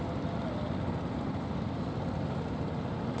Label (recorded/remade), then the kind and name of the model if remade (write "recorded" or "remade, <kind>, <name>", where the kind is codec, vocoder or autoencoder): recorded